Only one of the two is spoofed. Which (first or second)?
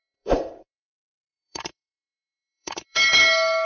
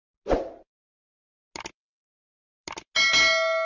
first